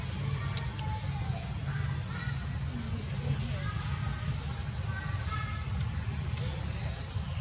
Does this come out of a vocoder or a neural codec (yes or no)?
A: no